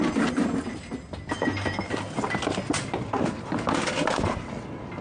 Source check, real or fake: real